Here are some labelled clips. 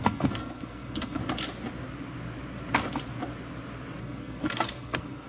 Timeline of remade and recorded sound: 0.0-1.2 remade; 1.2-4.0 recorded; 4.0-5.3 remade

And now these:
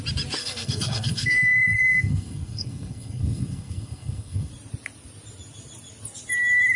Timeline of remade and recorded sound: 0.0-0.4 recorded; 0.4-4.5 remade; 4.5-6.8 recorded

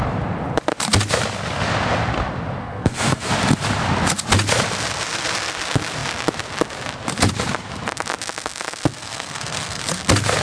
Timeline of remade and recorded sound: 0.0-2.6 recorded; 2.6-3.3 remade; 3.3-9.0 recorded; 9.0-9.8 remade; 9.8-10.4 recorded